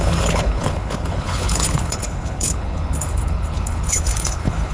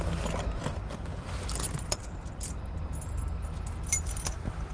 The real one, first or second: second